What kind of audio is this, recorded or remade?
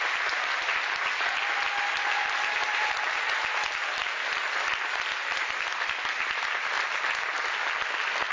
recorded